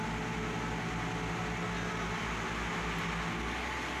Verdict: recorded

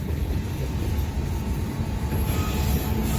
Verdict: recorded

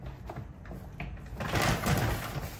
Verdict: recorded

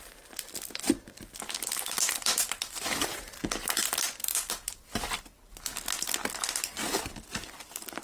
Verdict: remade